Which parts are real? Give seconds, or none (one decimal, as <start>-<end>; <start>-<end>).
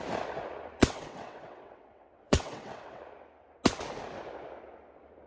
0.0-0.8; 3.0-5.3